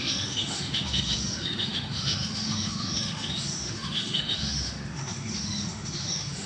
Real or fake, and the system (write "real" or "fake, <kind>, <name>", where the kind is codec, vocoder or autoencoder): fake, autoencoder, DAC-VAE